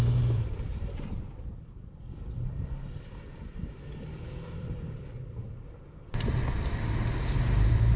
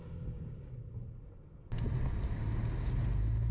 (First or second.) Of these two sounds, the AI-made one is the first